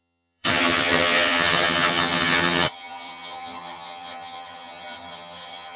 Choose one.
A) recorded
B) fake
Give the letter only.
B